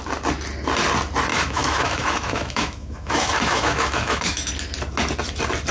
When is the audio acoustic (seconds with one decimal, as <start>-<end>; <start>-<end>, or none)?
0.0-1.3; 4.5-5.7